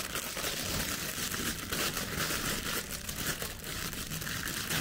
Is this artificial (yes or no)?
no